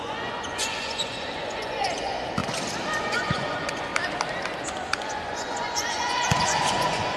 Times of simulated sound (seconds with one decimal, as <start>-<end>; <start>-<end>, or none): 0.0-2.4; 3.0-3.9; 4.6-7.2